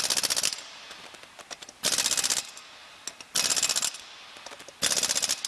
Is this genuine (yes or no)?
yes